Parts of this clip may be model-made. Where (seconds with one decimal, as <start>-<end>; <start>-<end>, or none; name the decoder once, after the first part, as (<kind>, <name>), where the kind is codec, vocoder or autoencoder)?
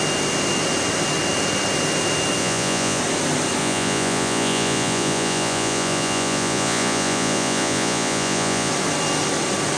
2.4-3.0 (vocoder, Vocos); 3.6-8.7